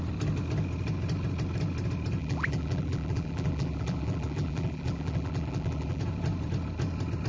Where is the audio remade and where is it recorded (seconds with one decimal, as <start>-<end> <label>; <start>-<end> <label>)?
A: 0.0-2.2 recorded; 2.2-6.0 remade; 6.0-7.3 recorded